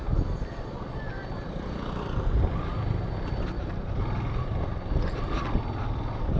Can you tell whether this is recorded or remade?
recorded